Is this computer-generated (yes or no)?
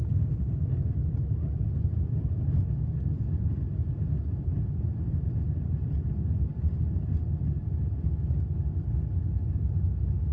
no